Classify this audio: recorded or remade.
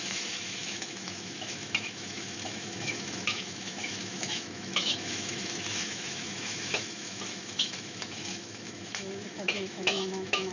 remade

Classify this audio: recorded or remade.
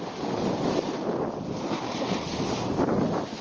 recorded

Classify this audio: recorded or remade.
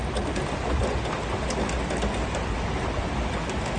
recorded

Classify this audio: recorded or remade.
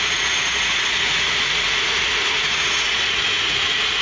remade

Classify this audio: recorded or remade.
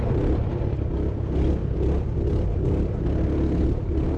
recorded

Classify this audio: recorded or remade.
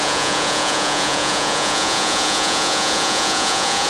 remade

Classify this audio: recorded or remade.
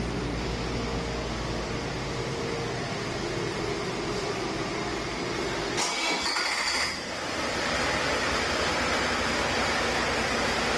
recorded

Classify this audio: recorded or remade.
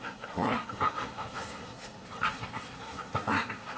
remade